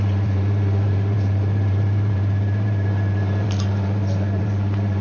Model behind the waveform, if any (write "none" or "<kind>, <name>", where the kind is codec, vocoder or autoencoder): vocoder, BigVGAN v2